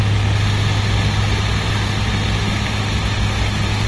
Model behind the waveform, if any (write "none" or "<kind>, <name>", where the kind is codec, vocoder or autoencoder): none